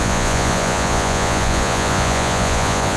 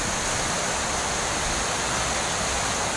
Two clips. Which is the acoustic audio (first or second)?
second